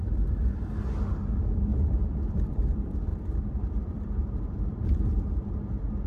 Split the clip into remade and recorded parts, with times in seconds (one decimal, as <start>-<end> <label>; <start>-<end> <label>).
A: 0.0-1.7 recorded; 1.7-2.6 remade; 2.6-3.1 recorded; 3.1-5.2 remade; 5.2-6.1 recorded